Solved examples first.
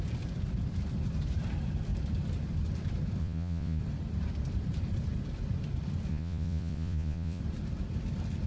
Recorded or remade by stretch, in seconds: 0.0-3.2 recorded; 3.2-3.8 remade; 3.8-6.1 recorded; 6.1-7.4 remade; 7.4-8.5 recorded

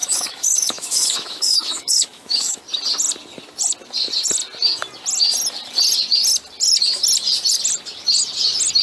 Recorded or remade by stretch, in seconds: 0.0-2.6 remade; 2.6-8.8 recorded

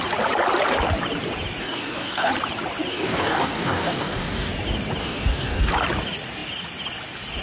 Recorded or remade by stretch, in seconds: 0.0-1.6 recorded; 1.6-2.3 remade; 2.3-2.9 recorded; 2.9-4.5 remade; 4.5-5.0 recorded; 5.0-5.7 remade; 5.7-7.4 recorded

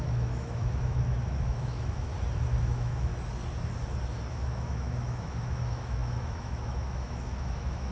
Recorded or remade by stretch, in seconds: 0.0-2.1 remade; 2.1-2.6 recorded; 2.6-3.1 remade; 3.1-4.3 recorded; 4.3-7.9 remade

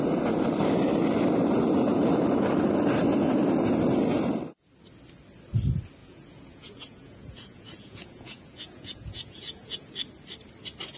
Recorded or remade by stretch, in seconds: 0.0-6.0 recorded; 6.0-9.9 remade; 9.9-11.0 recorded